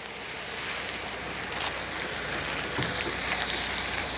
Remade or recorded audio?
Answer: recorded